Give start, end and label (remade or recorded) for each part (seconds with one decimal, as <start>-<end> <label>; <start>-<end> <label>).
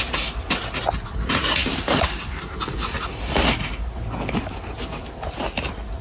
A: 0.0-6.0 recorded